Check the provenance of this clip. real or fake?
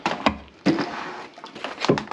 real